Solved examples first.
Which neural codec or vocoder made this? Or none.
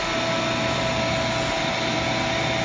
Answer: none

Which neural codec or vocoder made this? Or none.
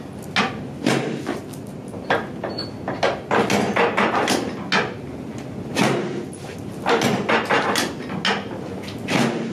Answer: none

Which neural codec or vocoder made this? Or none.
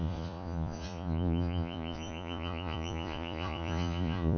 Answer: vocoder, Vocos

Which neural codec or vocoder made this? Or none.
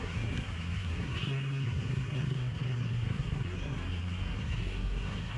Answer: codec, SNAC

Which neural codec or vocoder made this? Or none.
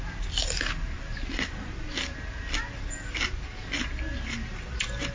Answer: none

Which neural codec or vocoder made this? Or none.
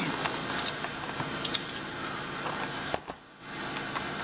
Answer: none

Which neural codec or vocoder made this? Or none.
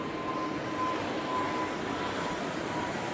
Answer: none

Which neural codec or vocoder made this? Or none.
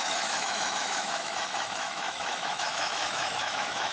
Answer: autoencoder, DAC-VAE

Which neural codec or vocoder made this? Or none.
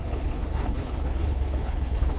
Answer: codec, HILCodec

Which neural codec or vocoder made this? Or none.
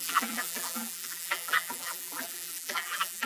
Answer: vocoder, BigVGAN v2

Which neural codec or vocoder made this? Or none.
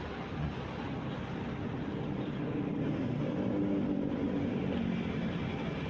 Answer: none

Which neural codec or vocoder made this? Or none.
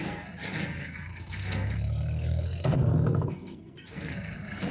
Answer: codec, SNAC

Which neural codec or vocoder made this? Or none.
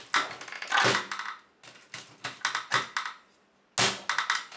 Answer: none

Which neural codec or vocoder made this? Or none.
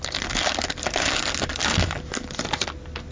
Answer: none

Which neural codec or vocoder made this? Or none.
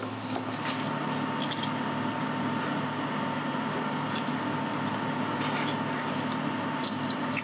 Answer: none